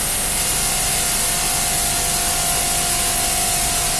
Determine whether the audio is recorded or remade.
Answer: recorded